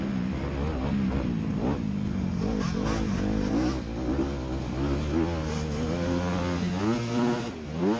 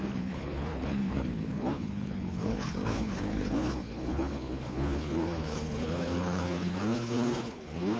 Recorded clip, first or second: first